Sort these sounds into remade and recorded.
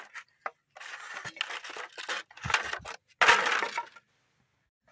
recorded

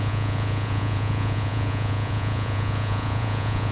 remade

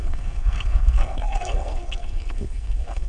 remade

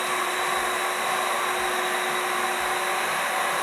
recorded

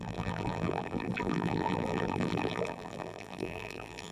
remade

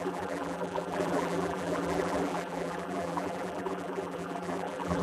remade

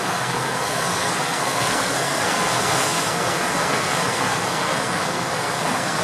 remade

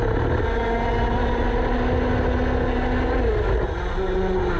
recorded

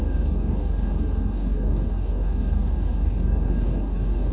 remade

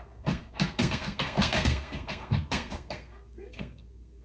remade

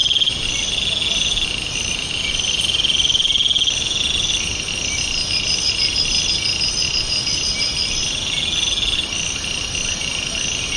recorded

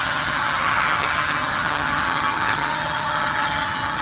remade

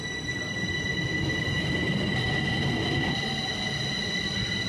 recorded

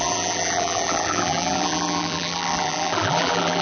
remade